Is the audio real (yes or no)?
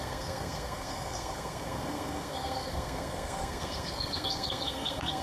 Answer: no